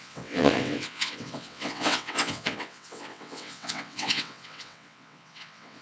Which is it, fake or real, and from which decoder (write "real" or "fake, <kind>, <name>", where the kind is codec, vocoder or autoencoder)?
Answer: fake, vocoder, WaveNeXt